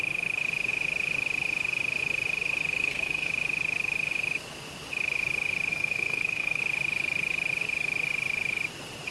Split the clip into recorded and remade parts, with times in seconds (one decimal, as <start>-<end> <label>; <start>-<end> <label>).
0.0-2.8 recorded; 2.8-3.3 remade; 3.3-5.7 recorded; 5.7-6.6 remade; 6.6-9.1 recorded